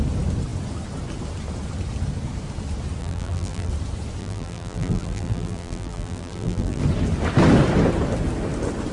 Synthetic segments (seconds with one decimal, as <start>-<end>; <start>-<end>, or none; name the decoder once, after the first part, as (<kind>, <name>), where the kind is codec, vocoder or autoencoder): 3.0-3.7 (vocoder, BigVGAN v2); 4.2-6.8